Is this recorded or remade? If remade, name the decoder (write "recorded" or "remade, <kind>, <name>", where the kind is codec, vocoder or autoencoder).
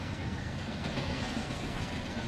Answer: remade, codec, SNAC